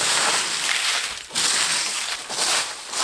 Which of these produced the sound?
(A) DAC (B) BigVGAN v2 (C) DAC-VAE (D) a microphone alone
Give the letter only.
D